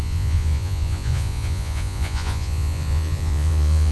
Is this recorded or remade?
remade